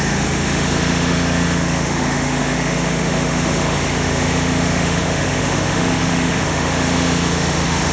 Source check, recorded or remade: remade